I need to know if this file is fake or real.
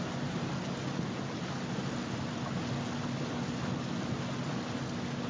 real